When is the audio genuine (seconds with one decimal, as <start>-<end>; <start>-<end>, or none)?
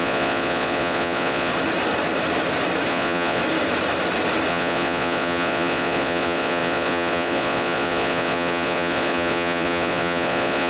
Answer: 1.5-2.9; 3.4-4.5